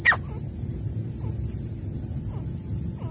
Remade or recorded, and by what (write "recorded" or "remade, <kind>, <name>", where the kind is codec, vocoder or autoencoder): recorded